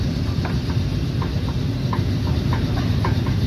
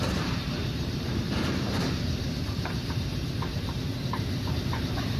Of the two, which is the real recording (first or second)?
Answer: first